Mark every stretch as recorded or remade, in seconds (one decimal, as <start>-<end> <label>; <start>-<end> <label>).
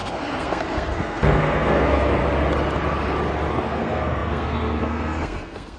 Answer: 0.0-2.2 remade; 2.2-3.5 recorded; 3.5-5.8 remade